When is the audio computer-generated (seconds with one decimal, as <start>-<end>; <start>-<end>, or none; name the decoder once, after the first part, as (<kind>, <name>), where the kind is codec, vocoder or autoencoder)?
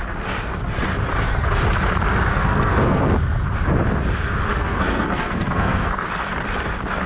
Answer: 2.3-3.0 (codec, SNAC); 4.5-6.1